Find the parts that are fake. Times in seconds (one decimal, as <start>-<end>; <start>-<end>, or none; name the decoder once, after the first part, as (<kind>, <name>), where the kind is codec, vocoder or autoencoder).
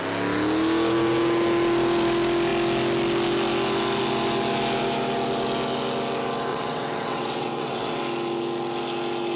6.5-8.0 (vocoder, WaveNeXt)